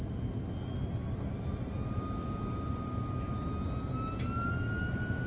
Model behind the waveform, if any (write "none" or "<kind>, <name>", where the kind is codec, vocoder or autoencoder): none